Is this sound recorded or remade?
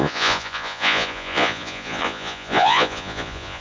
remade